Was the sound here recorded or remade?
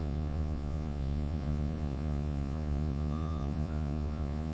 remade